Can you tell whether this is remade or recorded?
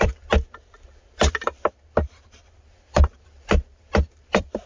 remade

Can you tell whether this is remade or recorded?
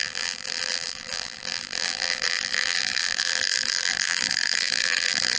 remade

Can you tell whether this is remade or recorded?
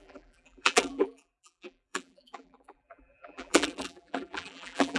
remade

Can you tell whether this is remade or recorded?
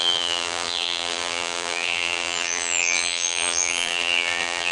remade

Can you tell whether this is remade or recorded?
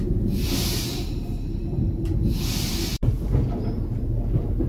remade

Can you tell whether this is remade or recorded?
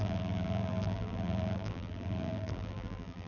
remade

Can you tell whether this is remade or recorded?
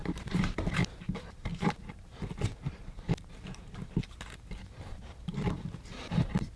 remade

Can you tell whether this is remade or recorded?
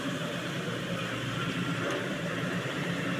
remade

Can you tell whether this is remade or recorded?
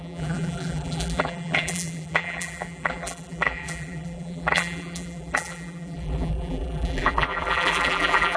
remade